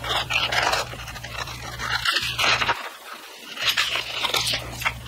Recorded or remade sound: recorded